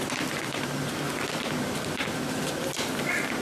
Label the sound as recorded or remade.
recorded